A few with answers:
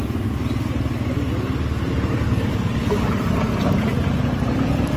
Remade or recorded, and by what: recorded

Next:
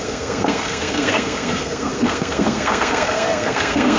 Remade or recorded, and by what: remade, codec, SNAC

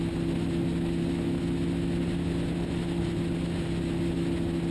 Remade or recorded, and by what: recorded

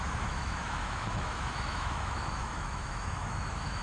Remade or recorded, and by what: remade, autoencoder, DAC-VAE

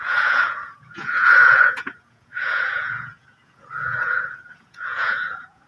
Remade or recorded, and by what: remade, vocoder, Vocos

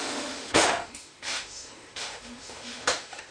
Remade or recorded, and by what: remade, autoencoder, DAC-VAE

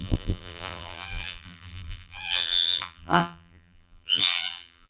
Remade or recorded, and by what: remade, vocoder, BigVGAN v2